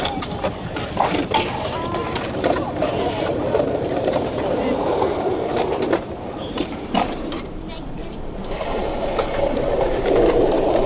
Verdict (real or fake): fake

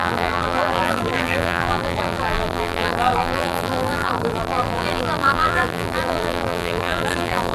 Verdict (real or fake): fake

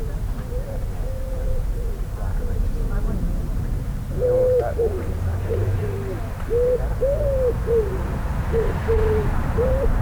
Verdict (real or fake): fake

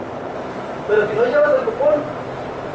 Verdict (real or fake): fake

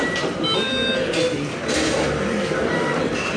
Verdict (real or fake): fake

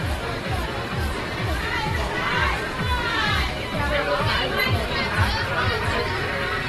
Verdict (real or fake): fake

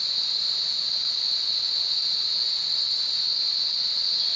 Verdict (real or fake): real